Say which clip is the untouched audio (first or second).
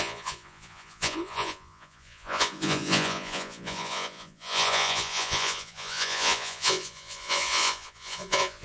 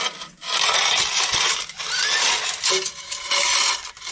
second